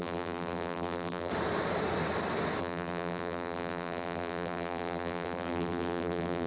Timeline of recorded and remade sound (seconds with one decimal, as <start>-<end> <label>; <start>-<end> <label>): 0.0-1.3 remade; 1.3-2.6 recorded; 2.6-6.5 remade

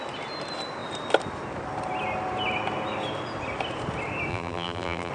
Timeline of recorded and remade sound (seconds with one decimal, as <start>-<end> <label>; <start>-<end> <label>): 0.0-4.3 recorded; 4.3-5.1 remade